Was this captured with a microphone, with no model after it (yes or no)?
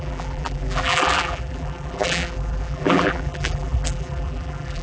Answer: no